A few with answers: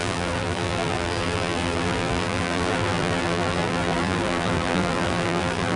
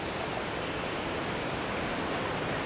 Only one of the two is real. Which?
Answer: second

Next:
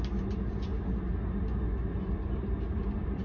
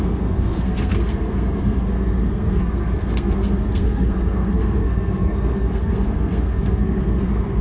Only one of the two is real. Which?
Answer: first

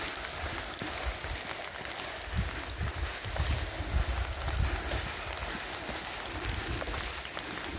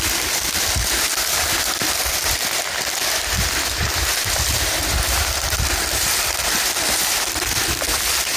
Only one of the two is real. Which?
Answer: first